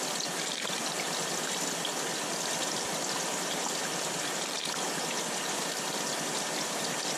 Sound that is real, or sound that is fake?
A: real